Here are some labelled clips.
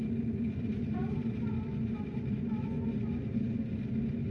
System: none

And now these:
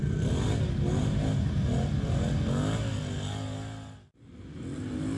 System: none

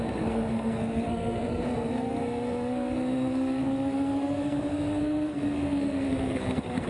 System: codec, SNAC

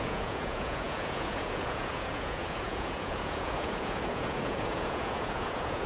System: vocoder, Vocos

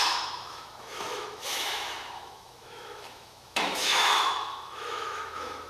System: autoencoder, DAC-VAE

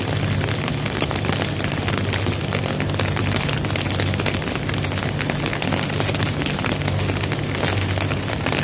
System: none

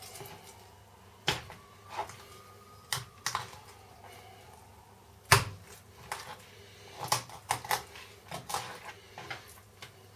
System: none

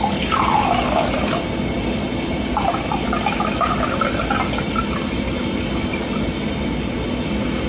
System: none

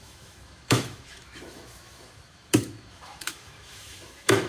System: autoencoder, DAC-VAE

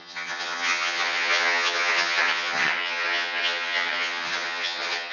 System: vocoder, HiFi-GAN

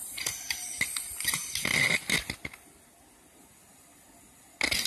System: none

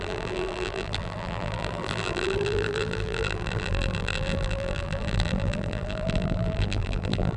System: vocoder, BigVGAN v2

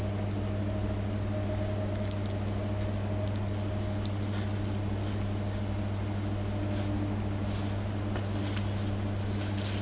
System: none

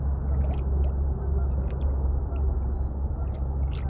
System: none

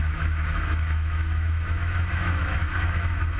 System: autoencoder, DAC-VAE